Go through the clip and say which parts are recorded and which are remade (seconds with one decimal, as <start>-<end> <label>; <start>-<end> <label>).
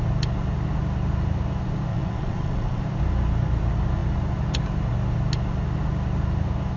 0.0-1.9 recorded; 1.9-2.8 remade; 2.8-6.8 recorded